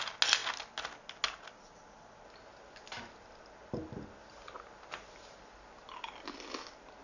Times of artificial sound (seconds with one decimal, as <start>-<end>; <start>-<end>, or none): none